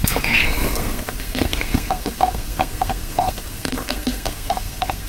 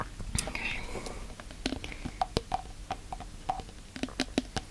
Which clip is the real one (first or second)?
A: second